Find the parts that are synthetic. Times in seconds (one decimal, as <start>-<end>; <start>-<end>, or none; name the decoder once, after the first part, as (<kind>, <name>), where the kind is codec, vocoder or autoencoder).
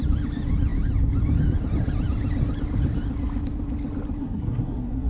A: 4.2-5.1 (codec, SNAC)